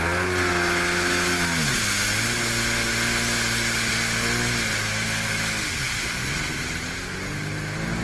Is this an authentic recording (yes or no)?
yes